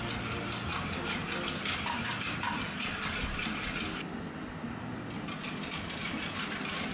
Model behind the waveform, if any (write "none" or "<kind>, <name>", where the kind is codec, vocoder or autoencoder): none